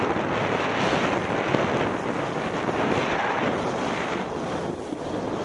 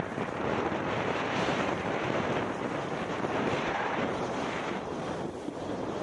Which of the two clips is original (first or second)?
first